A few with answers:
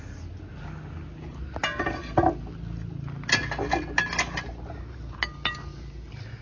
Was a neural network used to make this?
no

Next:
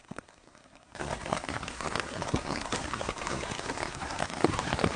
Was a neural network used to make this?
yes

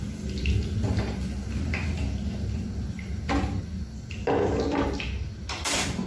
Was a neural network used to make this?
no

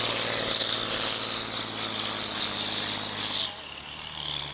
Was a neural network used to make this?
no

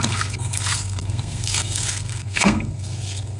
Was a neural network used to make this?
yes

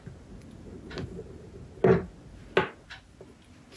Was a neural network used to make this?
no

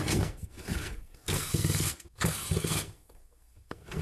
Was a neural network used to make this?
yes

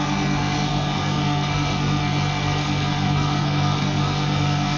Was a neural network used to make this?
yes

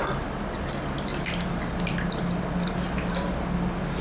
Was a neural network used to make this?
no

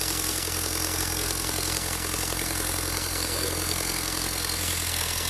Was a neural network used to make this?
yes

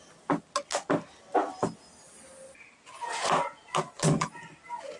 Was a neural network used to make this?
no